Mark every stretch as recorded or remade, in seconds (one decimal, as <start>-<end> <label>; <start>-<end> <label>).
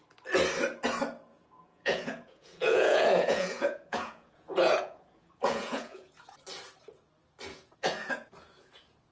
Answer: 0.0-1.3 recorded; 1.3-6.4 remade; 6.4-7.5 recorded; 7.5-9.1 remade